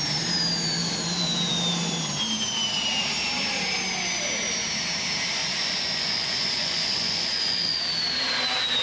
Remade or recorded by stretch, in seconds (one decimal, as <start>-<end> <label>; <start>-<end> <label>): 0.0-5.4 recorded; 5.4-7.8 remade; 7.8-8.8 recorded